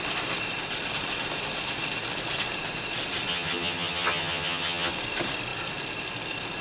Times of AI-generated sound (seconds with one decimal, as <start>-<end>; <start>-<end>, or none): 3.3-4.9